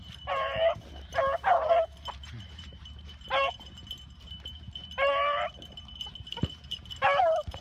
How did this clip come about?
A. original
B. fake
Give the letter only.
B